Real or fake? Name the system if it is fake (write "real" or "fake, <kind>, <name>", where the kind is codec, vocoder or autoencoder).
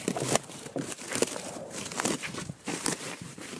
fake, vocoder, BigVGAN v2